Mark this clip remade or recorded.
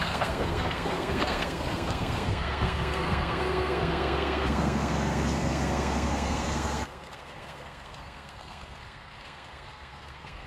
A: remade